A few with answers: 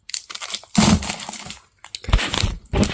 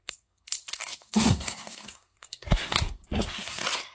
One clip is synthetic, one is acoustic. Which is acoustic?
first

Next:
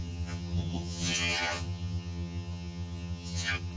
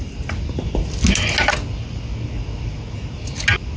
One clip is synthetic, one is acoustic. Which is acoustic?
second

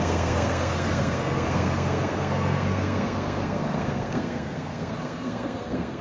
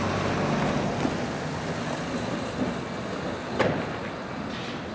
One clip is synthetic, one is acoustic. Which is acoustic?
second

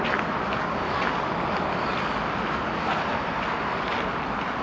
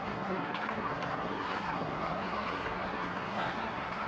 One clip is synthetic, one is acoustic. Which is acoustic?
first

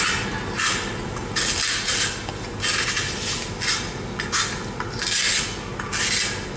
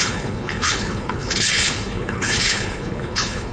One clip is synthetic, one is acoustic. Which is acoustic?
first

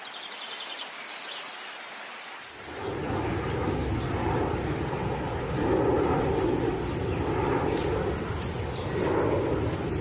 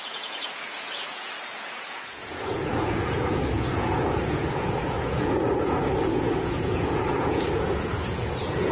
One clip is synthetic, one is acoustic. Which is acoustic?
first